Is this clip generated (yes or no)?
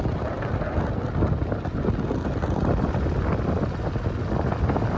no